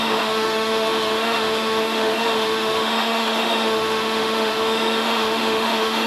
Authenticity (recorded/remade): remade